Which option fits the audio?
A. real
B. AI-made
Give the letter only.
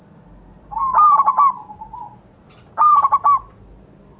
A